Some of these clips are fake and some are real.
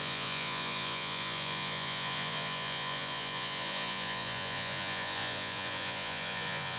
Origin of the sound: fake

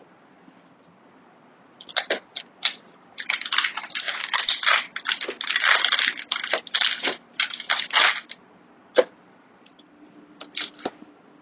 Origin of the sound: real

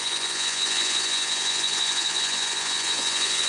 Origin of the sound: fake